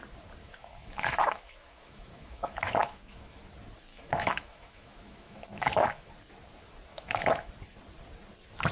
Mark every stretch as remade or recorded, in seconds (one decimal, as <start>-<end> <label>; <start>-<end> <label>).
0.0-0.4 recorded; 0.4-3.4 remade; 3.4-3.9 recorded; 3.9-6.1 remade; 6.1-6.9 recorded; 6.9-7.5 remade; 7.5-8.7 recorded